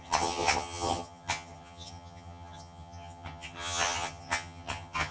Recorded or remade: remade